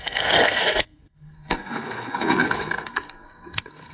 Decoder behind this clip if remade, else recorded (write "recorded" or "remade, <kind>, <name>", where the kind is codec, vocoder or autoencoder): remade, codec, SNAC